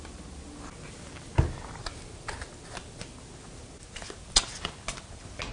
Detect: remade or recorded recorded